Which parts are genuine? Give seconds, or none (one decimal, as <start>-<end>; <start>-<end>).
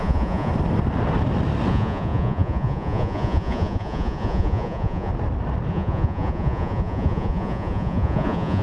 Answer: 0.5-1.7; 5.1-5.7